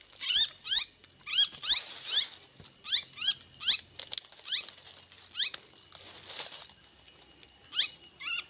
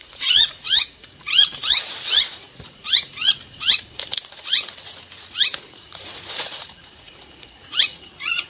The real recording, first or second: first